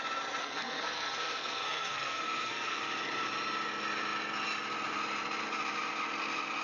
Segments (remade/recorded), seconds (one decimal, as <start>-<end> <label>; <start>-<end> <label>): 0.0-0.4 recorded; 0.4-2.8 remade; 2.8-6.6 recorded